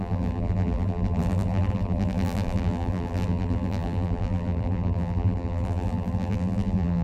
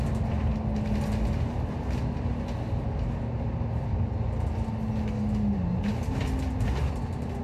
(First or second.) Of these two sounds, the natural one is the second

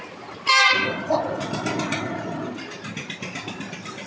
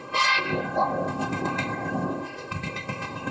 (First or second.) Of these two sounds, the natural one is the first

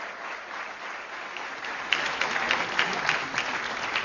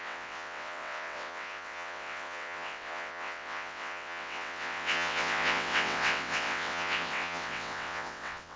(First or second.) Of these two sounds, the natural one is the first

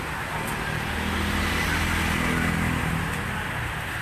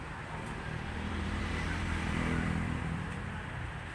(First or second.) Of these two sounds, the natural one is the first